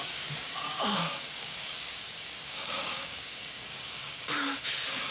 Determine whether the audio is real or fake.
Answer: fake